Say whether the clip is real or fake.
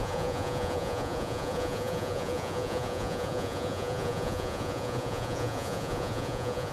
fake